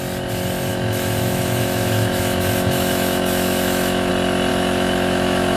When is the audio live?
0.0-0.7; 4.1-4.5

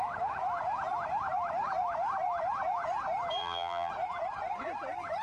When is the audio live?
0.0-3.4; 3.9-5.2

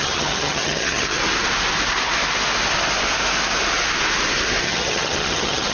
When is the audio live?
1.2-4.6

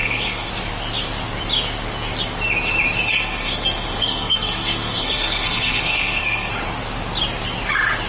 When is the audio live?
0.5-3.1; 6.5-8.1

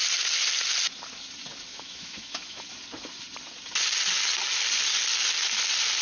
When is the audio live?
0.0-1.7; 2.6-6.0